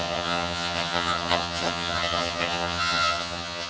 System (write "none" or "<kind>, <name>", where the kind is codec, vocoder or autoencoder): vocoder, HiFi-GAN